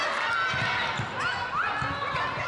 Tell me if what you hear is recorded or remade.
recorded